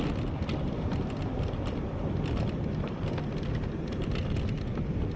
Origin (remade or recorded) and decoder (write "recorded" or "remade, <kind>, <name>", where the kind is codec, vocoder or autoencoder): recorded